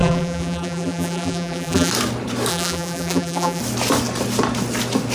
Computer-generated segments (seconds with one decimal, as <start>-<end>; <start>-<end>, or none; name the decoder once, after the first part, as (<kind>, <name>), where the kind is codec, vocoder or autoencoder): 0.0-1.9 (vocoder, BigVGAN v2); 2.5-3.6